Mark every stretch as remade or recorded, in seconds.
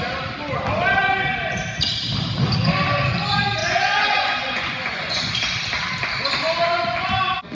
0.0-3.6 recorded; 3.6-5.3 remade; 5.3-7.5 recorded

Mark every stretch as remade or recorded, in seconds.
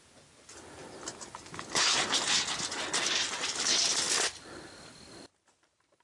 0.0-6.0 recorded